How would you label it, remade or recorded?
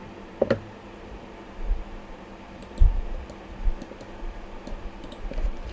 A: remade